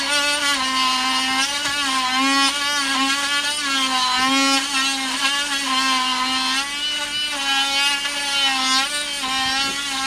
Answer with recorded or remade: recorded